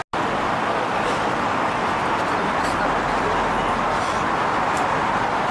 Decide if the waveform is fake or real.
real